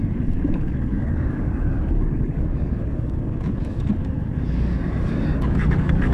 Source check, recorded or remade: remade